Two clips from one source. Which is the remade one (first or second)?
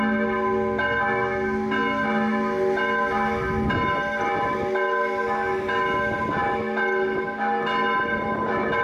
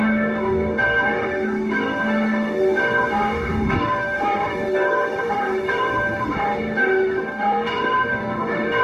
second